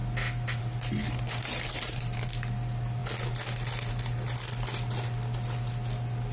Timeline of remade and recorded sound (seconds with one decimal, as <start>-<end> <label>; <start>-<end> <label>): 0.0-1.0 recorded; 1.0-2.3 remade; 2.3-6.3 recorded